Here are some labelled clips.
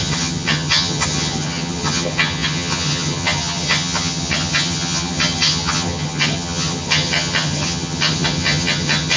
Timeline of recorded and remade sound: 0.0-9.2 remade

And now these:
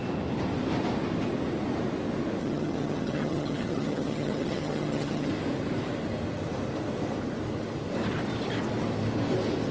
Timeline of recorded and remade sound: 0.0-2.4 recorded; 2.4-5.3 remade; 5.3-9.7 recorded

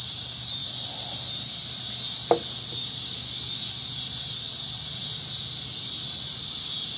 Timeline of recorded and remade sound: 0.0-7.0 recorded

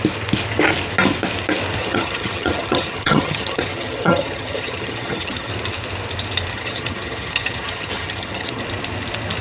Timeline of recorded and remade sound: 0.0-1.8 recorded; 1.8-5.5 remade; 5.5-6.5 recorded; 6.5-8.6 remade; 8.6-9.4 recorded

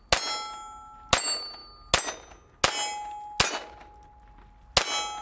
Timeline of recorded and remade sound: 0.0-5.2 recorded

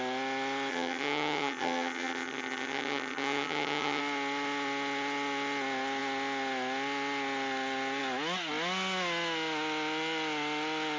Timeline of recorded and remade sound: 0.0-0.7 recorded; 0.7-4.0 remade; 4.0-11.0 recorded